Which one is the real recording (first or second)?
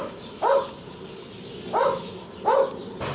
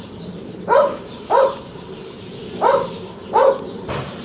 first